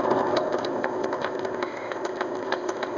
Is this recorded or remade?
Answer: remade